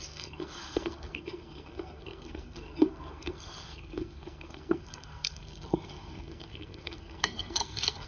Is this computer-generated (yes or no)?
yes